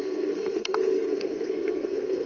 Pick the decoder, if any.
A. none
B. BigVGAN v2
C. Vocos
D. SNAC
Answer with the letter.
D